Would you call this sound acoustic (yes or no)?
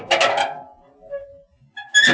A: yes